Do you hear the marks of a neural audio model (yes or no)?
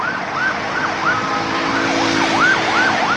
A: no